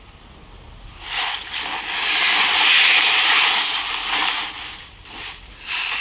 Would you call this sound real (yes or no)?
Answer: yes